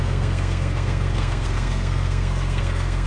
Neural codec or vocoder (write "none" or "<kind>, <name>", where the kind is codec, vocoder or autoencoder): codec, SNAC